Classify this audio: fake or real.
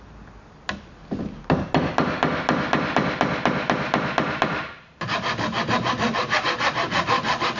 real